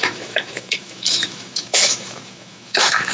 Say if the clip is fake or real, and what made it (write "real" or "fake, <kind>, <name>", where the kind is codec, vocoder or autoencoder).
fake, autoencoder, DAC-VAE